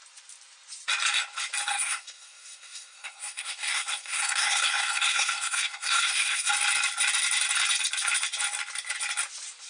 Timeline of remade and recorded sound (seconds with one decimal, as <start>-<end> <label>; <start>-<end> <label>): 0.0-1.7 recorded; 1.7-6.5 remade; 6.5-9.7 recorded

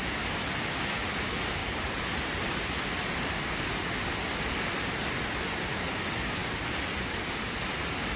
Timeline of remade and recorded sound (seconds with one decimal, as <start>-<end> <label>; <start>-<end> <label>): 0.0-1.6 recorded; 1.6-3.5 remade; 3.5-8.2 recorded

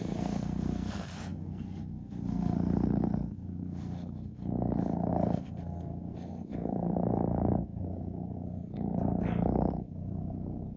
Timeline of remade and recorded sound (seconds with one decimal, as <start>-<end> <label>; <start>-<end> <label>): 0.0-10.8 remade

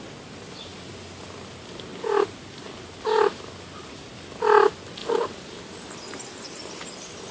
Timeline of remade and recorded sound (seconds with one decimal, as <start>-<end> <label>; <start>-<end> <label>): 0.0-7.3 recorded

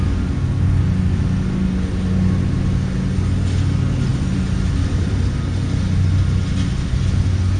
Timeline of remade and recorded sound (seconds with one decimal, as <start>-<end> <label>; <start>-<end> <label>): 0.0-4.1 recorded; 4.1-5.1 remade; 5.1-7.6 recorded

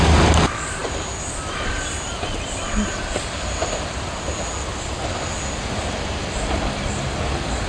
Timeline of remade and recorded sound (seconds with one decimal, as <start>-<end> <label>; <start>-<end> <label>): 0.0-7.7 recorded

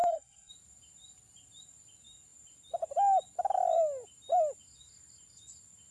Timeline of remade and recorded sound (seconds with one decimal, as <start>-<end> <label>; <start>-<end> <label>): 0.0-0.5 remade; 0.5-5.9 recorded

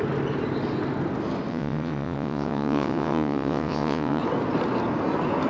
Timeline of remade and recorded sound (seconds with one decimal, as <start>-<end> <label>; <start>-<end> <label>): 0.0-1.5 recorded; 1.5-4.2 remade; 4.2-5.5 recorded